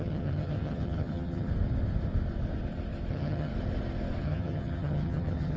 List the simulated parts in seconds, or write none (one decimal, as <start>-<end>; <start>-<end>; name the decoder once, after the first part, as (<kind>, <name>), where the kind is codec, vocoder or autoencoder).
0.0-1.5 (vocoder, HiFi-GAN); 3.1-3.5; 4.2-5.6